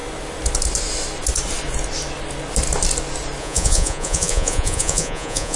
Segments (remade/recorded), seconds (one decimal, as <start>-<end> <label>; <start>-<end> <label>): 0.0-3.4 recorded; 3.4-5.6 remade